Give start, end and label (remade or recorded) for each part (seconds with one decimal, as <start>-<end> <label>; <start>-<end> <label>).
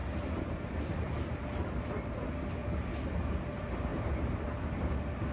0.0-5.3 recorded